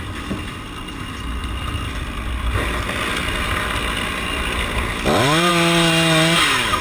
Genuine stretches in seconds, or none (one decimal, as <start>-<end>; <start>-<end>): 0.0-1.4; 5.5-6.8

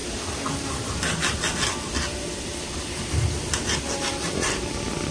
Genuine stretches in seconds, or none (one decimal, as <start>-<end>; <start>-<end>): 0.0-3.1

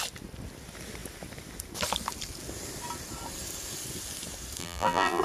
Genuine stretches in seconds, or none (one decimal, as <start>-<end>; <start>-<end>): 0.0-4.6